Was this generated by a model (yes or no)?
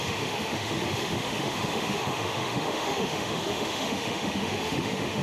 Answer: yes